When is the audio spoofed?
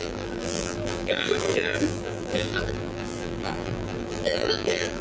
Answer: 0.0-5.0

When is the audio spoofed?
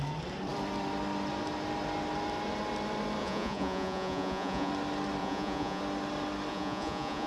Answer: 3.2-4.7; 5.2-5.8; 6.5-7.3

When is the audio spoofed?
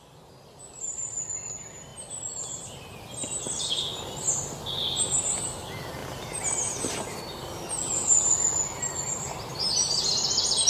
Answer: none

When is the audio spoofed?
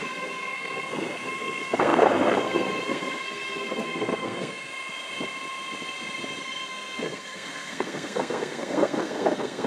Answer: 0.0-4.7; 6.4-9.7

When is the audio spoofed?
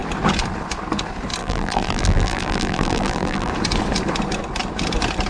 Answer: 1.4-3.5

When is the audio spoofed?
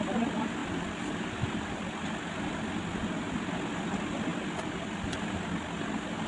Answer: none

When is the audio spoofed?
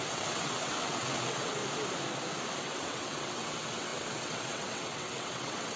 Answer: 0.0-1.6; 2.6-5.8